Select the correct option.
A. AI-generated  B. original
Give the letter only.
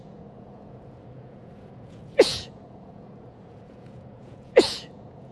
A